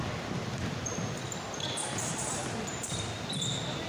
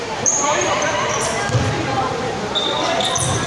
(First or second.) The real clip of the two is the first